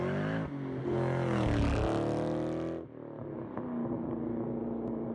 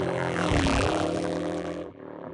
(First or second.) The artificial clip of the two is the second